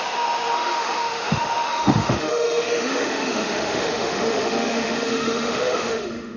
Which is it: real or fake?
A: fake